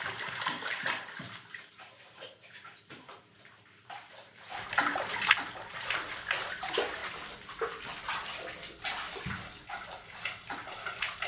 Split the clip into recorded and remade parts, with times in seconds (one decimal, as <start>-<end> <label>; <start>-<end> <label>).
0.0-7.0 remade; 7.0-10.5 recorded; 10.5-11.3 remade